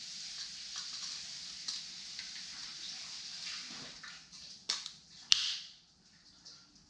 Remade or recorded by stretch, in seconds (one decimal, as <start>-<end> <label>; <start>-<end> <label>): 0.0-2.7 recorded; 2.7-6.5 remade; 6.5-6.9 recorded